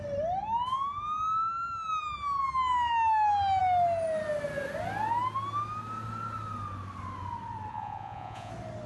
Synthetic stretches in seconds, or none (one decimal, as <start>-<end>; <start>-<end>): 7.7-8.5